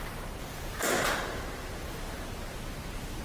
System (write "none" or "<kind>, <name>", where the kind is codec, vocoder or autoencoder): none